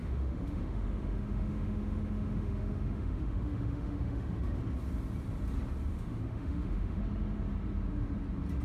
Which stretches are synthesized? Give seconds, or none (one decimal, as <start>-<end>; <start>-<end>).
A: 0.0-4.6; 5.9-7.0